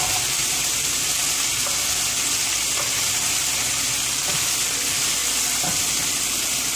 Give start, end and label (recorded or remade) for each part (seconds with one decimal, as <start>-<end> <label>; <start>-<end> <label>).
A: 0.0-1.2 remade; 1.2-3.4 recorded; 3.4-5.2 remade; 5.2-6.8 recorded